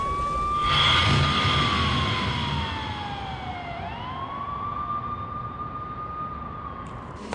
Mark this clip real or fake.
real